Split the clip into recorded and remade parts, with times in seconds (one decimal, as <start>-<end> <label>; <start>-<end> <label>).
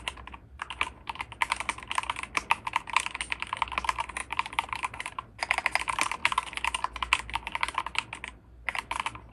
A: 0.0-4.2 recorded; 4.2-5.4 remade; 5.4-9.3 recorded